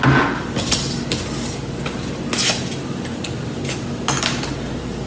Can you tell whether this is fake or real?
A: real